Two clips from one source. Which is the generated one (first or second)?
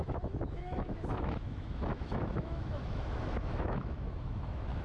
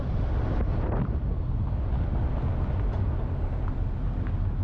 first